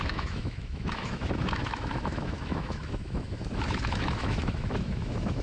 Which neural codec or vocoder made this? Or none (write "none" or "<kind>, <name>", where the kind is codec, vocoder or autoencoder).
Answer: autoencoder, DAC-VAE